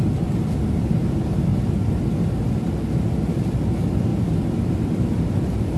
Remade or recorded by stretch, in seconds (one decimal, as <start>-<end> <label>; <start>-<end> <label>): 0.0-5.8 recorded